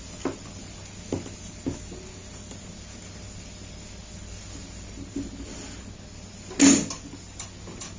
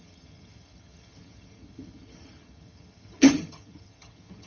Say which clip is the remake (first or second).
second